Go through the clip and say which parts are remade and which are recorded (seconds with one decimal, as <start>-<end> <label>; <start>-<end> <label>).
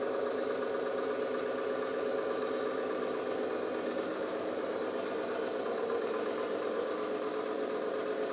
0.0-4.1 recorded; 4.1-4.6 remade; 4.6-8.3 recorded